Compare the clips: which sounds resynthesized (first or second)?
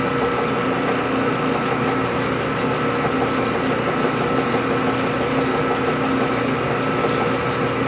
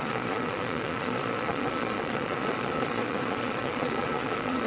second